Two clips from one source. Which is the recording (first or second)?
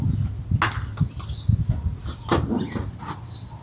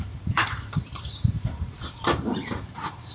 first